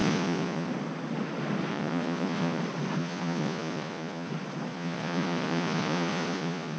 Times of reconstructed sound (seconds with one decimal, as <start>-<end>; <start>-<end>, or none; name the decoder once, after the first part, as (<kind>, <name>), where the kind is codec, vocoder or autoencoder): 0.0-0.7 (vocoder, Vocos); 1.7-2.6; 3.0-4.3; 4.7-6.8